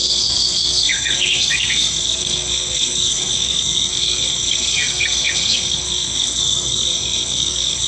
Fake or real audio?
fake